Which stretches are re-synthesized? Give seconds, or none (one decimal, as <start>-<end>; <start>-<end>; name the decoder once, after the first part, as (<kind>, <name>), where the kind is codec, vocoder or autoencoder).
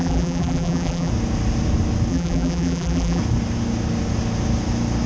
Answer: 0.0-1.1 (vocoder, BigVGAN v2); 2.1-3.2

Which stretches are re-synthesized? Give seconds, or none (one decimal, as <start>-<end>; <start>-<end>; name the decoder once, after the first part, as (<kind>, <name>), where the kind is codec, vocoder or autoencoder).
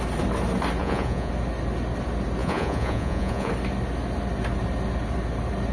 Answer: 0.8-1.3 (vocoder, Vocos); 2.4-3.5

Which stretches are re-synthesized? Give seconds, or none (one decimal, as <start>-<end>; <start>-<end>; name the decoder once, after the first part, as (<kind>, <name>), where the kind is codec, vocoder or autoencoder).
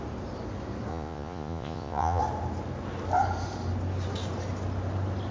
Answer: 0.9-2.2 (vocoder, Vocos)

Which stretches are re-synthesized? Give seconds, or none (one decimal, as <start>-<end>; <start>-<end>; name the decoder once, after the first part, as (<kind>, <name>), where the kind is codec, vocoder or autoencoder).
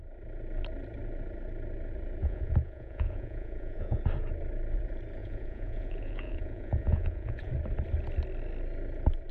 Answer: 2.2-4.0 (vocoder, Vocos); 5.2-7.5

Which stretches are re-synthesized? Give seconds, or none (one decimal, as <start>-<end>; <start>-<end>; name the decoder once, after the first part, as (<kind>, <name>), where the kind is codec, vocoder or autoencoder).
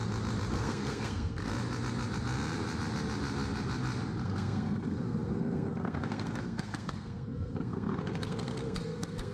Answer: 0.5-1.5 (codec, SNAC); 4.2-9.3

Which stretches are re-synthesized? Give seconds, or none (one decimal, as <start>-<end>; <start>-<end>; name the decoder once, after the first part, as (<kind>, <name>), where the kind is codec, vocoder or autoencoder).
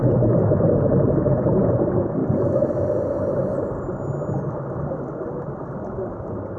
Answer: none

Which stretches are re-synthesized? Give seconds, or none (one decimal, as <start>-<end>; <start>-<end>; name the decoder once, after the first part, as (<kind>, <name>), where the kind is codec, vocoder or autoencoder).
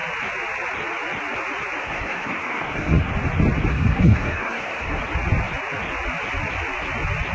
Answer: 1.8-3.1 (codec, SNAC); 3.7-5.0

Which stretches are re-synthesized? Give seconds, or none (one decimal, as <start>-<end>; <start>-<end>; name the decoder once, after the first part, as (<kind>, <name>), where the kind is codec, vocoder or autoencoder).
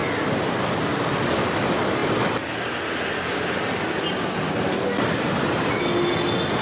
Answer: none